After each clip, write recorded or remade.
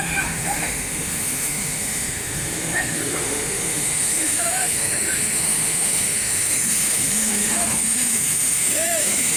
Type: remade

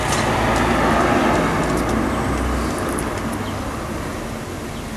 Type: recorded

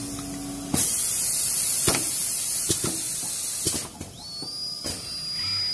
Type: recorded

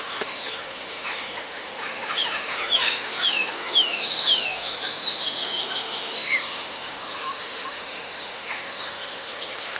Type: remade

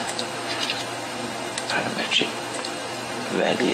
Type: remade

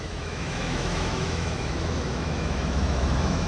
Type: remade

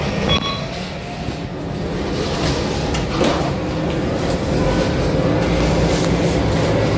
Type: recorded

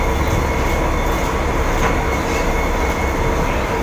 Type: recorded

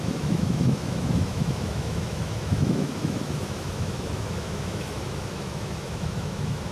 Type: remade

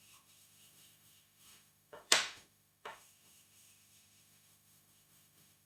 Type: remade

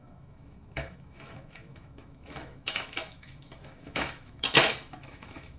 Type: remade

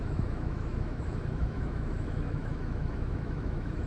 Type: remade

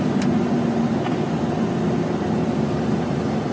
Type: recorded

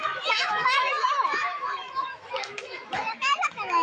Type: remade